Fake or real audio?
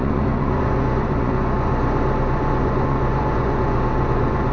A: fake